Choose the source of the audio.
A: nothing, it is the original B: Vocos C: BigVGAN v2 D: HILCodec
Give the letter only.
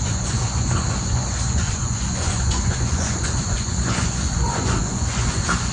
B